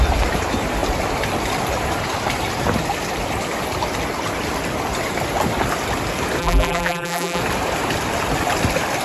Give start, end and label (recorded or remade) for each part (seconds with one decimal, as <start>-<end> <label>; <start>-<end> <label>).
0.0-6.4 recorded; 6.4-7.4 remade; 7.4-9.0 recorded